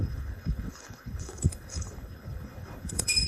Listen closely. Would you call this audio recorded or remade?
remade